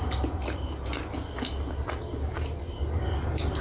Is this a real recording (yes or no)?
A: yes